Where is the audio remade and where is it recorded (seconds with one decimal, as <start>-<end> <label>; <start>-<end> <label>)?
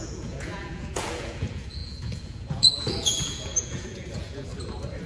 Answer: 0.0-4.5 remade; 4.5-5.1 recorded